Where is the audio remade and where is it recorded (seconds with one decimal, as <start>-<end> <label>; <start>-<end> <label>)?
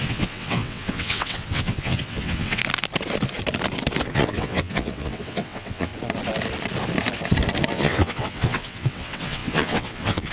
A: 0.0-2.6 remade; 2.6-4.1 recorded; 4.1-5.9 remade; 5.9-7.7 recorded; 7.7-10.3 remade